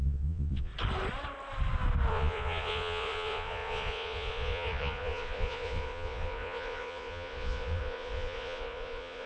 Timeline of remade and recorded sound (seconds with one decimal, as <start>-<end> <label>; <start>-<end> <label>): 0.0-0.7 remade; 0.7-2.1 recorded; 2.1-9.3 remade